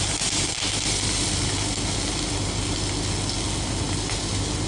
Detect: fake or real real